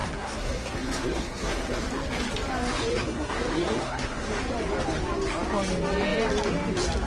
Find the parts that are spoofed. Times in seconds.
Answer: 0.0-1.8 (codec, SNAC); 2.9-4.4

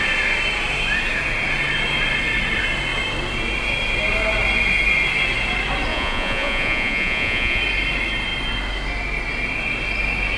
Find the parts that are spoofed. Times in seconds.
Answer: 5.9-7.6 (vocoder, Vocos)